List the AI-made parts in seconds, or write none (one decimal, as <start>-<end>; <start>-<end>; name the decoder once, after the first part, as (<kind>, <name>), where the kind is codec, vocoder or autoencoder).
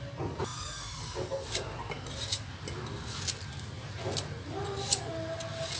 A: none